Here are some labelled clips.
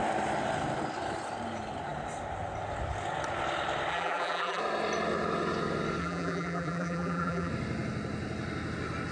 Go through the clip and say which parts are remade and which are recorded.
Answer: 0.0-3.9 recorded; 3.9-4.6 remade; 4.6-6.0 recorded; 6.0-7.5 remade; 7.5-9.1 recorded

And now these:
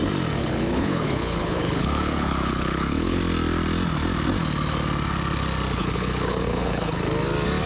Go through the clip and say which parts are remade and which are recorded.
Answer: 0.0-0.4 recorded; 0.4-3.2 remade; 3.2-5.8 recorded; 5.8-7.0 remade; 7.0-7.7 recorded

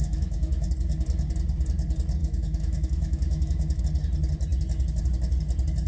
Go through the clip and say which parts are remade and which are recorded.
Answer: 0.0-0.7 remade; 0.7-2.2 recorded; 2.2-3.8 remade; 3.8-5.9 recorded

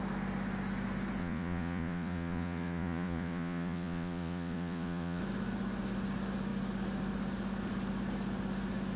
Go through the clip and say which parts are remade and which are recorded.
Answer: 0.0-1.2 recorded; 1.2-5.2 remade; 5.2-9.0 recorded

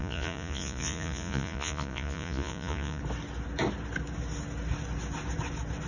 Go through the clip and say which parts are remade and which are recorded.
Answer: 0.0-3.0 remade; 3.0-5.9 recorded